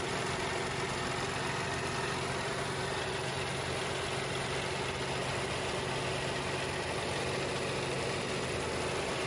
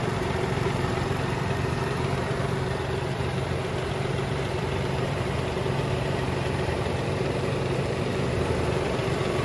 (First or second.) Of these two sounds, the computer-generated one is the second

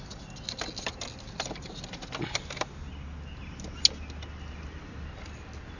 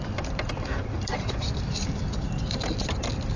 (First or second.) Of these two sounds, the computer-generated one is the second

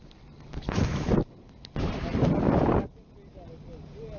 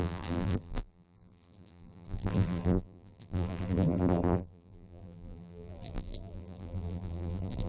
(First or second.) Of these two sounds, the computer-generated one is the second